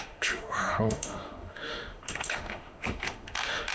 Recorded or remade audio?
remade